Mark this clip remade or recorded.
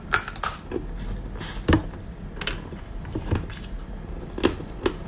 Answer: recorded